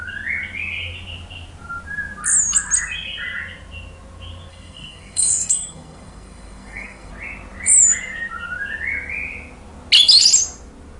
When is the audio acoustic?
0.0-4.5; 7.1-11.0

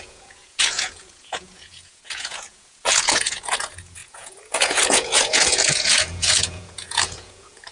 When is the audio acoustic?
none

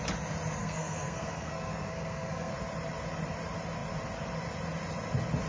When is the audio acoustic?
0.0-0.6; 2.5-5.5

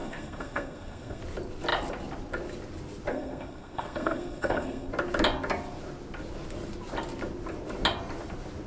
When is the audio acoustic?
1.2-3.1; 4.9-8.7

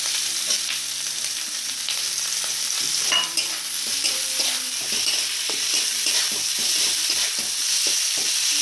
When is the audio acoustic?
3.3-4.4

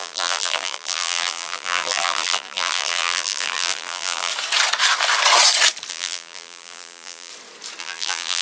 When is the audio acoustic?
4.3-5.9; 7.3-7.8